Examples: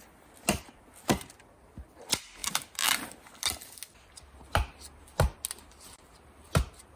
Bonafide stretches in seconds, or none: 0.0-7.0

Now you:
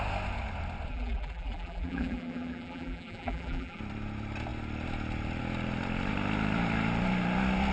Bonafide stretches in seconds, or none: 0.0-0.9; 3.8-7.7

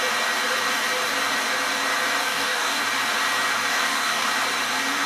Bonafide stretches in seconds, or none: 0.0-2.2; 2.8-3.7; 4.3-5.1

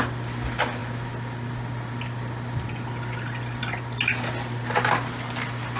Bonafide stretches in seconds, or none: 0.0-5.8

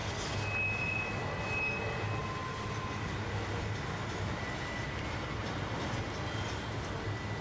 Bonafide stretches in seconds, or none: 0.0-5.4; 6.0-7.4

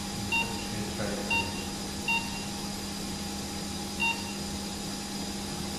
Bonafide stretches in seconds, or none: 0.0-5.8

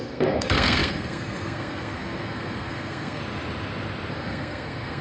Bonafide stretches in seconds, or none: 3.2-4.1

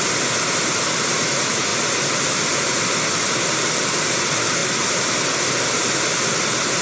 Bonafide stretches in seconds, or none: 0.0-6.8